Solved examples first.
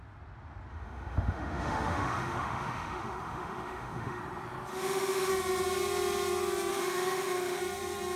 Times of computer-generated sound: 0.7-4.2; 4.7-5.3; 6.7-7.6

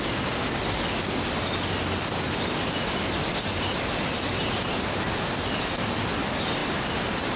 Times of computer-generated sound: none